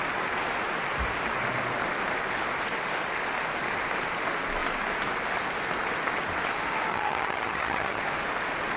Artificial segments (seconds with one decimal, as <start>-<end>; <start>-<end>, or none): 6.9-8.0